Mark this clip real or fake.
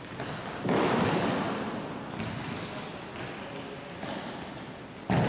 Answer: real